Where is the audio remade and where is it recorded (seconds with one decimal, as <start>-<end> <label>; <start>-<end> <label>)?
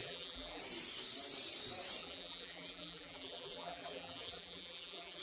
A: 0.0-0.6 remade; 0.6-2.0 recorded; 2.0-5.2 remade